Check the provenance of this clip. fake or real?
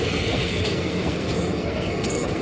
fake